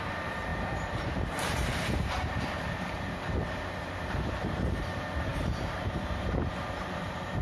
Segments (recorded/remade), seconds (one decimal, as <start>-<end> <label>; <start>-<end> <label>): 0.0-7.4 remade